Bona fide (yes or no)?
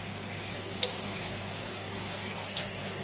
no